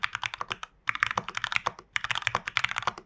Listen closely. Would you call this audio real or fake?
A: real